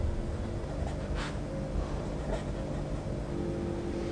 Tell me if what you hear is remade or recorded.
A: recorded